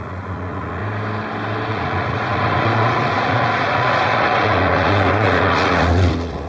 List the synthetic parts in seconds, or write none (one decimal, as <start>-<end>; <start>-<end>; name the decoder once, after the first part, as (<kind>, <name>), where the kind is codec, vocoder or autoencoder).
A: 0.0-0.8 (vocoder, Vocos); 1.7-6.5